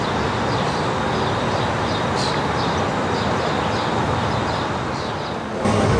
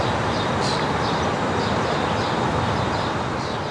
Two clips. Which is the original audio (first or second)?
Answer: first